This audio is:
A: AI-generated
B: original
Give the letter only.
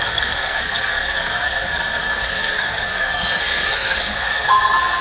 A